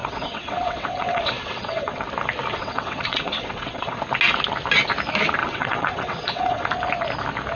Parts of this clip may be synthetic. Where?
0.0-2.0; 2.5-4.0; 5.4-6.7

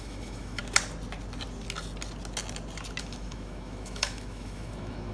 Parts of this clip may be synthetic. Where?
0.0-0.6; 3.0-5.1

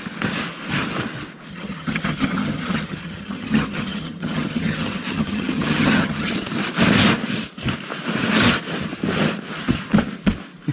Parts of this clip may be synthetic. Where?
1.5-6.3

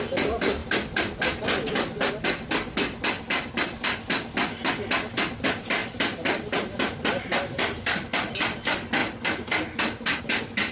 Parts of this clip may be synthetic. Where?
none

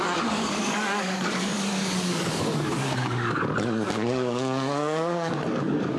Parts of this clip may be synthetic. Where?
0.0-6.0

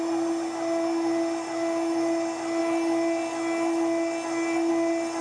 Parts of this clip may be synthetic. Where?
none

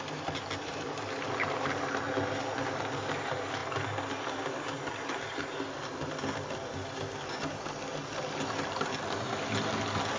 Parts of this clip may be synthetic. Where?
none